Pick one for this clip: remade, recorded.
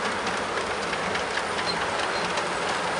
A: recorded